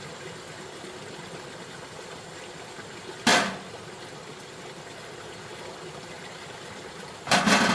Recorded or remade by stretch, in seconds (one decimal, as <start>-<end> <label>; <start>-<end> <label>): 0.0-7.7 recorded